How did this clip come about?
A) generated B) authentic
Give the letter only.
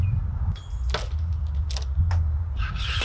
B